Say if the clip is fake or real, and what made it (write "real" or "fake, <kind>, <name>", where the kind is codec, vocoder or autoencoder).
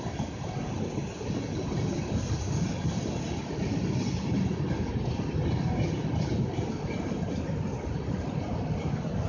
real